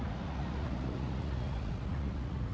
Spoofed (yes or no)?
yes